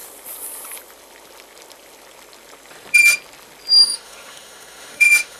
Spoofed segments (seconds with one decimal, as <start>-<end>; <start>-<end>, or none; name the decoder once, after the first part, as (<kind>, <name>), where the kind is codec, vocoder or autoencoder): 3.8-5.4 (autoencoder, DAC-VAE)